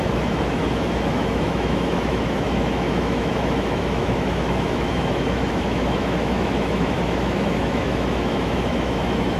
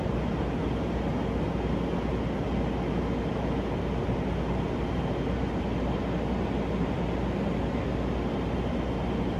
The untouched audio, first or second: second